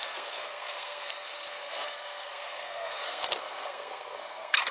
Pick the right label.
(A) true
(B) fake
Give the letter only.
B